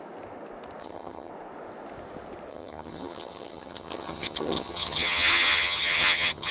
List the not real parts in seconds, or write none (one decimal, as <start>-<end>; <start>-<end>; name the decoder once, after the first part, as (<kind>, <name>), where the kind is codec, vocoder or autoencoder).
0.8-1.3 (vocoder, HiFi-GAN); 2.5-6.5